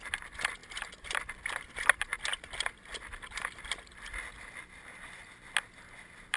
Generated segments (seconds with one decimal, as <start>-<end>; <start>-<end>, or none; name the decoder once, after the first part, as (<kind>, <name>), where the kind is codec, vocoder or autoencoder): 0.6-1.4 (vocoder, BigVGAN v2)